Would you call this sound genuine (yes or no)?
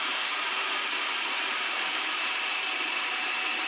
no